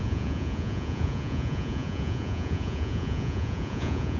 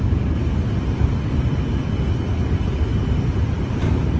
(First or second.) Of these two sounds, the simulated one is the first